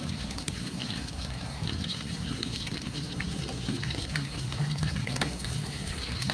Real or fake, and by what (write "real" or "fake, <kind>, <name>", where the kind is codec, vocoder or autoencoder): fake, codec, SNAC